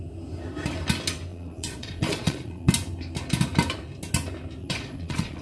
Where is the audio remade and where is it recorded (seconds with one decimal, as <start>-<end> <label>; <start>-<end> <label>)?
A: 0.0-1.3 recorded; 1.3-2.7 remade; 2.7-4.6 recorded; 4.6-5.4 remade